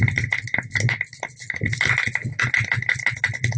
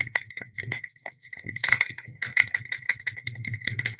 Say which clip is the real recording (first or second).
first